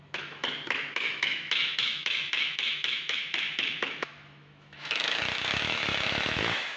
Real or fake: fake